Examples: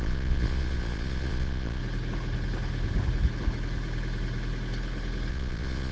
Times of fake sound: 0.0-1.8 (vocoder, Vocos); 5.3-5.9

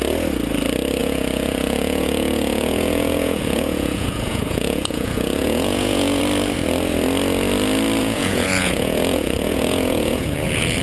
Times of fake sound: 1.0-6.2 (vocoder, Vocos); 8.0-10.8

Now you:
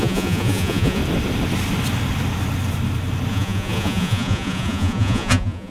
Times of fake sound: 0.0-1.0 (vocoder, Vocos); 3.3-5.7

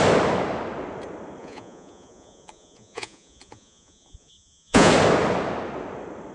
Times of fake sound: 1.4-4.9 (vocoder, Vocos)

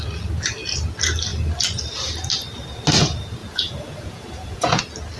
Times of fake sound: 3.4-4.8 (vocoder, Vocos)

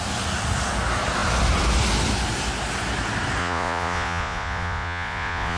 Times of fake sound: 3.4-5.6 (vocoder, Vocos)

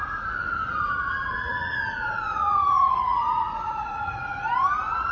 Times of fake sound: 0.0-5.1 (vocoder, Vocos)

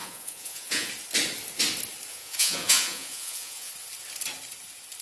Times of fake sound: 0.0-0.9 (vocoder, Vocos); 2.1-3.7